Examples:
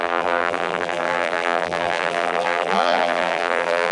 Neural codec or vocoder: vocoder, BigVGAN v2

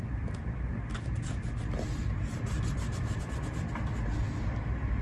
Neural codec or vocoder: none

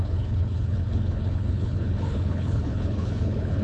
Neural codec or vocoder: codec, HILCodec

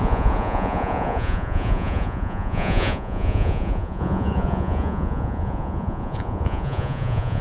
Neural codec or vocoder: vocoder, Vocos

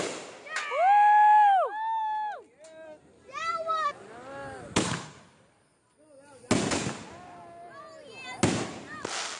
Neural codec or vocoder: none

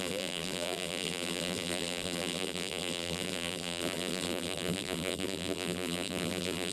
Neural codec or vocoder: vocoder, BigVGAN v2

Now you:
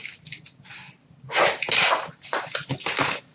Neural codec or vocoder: none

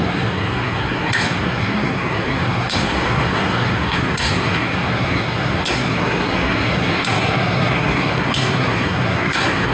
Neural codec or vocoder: codec, SNAC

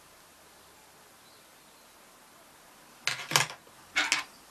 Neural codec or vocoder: none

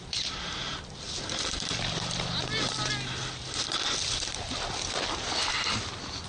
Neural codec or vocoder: none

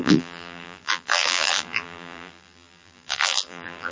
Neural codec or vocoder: vocoder, BigVGAN v2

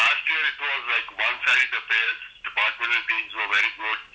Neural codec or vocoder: none